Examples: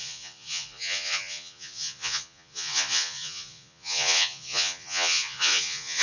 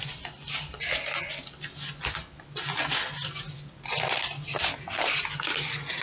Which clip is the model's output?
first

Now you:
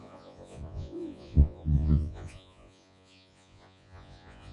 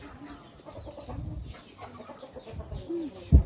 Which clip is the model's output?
first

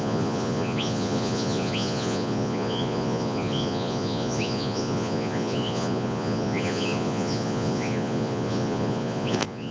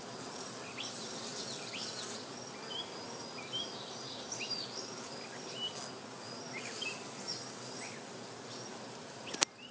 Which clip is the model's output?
first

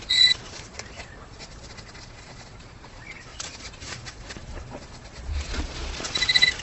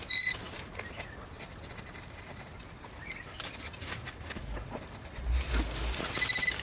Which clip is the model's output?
first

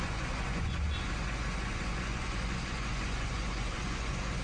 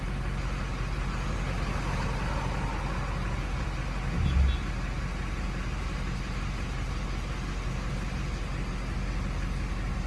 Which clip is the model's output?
first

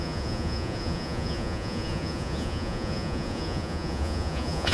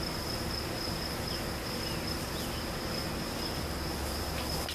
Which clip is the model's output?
first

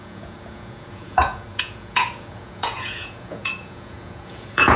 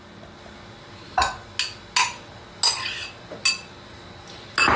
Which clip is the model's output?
first